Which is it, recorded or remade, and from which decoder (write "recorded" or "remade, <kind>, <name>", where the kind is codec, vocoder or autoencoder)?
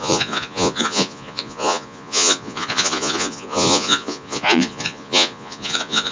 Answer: remade, vocoder, Vocos